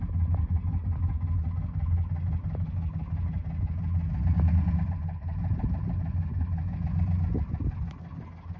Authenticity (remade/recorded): recorded